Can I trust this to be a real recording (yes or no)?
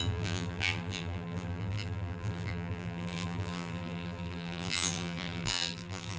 no